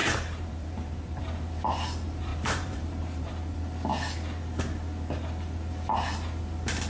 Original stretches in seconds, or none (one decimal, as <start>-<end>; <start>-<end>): 1.2-2.3; 3.3-6.9